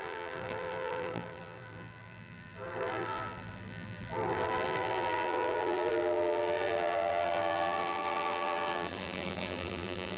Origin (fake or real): fake